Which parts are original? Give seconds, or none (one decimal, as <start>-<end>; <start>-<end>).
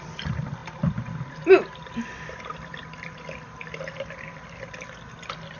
0.0-5.6